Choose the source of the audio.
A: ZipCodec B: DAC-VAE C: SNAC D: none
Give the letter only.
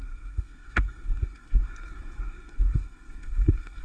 C